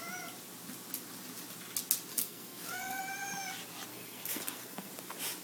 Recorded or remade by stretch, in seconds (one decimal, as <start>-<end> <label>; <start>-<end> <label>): 0.0-2.1 recorded; 2.1-3.0 remade; 3.0-3.9 recorded; 3.9-4.9 remade; 4.9-5.4 recorded